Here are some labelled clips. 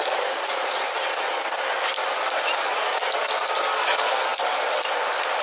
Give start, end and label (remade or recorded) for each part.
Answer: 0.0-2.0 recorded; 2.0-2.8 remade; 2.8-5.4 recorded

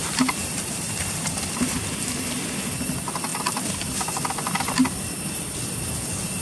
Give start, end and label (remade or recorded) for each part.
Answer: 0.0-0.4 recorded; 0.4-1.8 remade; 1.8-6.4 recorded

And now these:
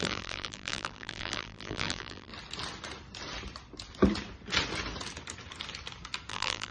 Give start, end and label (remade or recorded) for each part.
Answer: 0.0-2.3 remade; 2.3-6.3 recorded; 6.3-6.7 remade

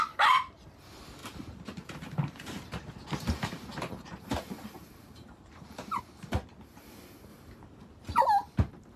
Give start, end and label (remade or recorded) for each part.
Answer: 0.0-1.2 recorded; 1.2-6.0 remade; 6.0-7.3 recorded; 7.3-8.2 remade; 8.2-9.0 recorded